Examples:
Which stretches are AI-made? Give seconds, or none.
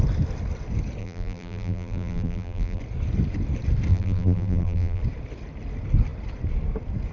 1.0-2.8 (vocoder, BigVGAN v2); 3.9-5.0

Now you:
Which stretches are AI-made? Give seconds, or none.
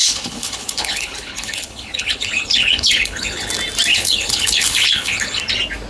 0.0-3.5 (codec, HILCodec); 3.9-5.4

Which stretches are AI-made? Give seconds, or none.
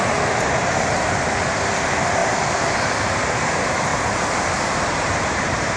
0.0-2.2 (vocoder, BigVGAN v2); 3.0-3.9; 4.6-5.8